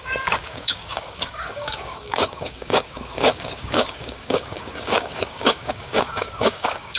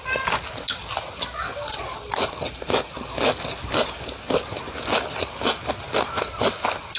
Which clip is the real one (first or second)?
second